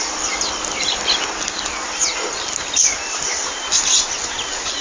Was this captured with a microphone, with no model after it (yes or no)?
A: yes